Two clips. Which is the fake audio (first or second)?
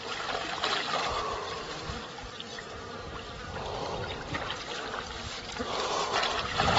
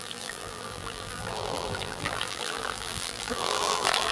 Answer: second